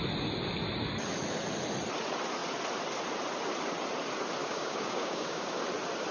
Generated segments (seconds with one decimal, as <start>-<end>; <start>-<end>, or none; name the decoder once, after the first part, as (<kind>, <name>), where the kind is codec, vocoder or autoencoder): 4.4-5.6 (codec, DAC)